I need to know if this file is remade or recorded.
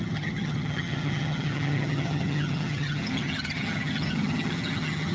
remade